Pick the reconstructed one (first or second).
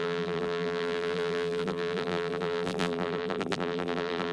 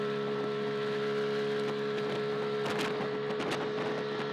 first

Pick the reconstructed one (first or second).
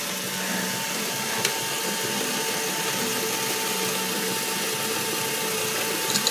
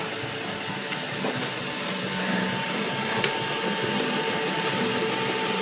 second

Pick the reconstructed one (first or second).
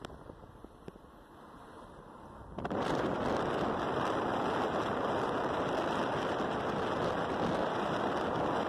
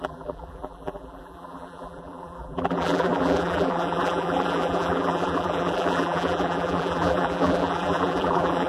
second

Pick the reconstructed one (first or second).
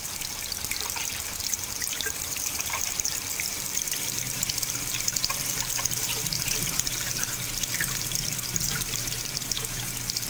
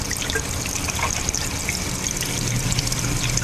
first